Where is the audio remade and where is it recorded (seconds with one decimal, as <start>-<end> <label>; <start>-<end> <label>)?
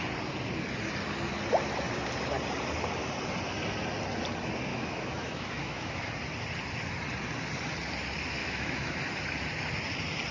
0.0-4.7 recorded; 4.7-6.1 remade; 6.1-8.4 recorded; 8.4-9.0 remade; 9.0-10.3 recorded